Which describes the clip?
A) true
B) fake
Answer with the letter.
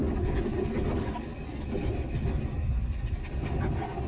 A